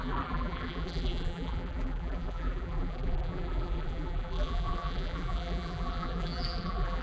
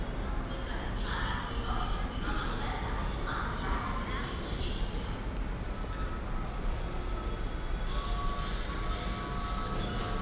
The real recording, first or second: second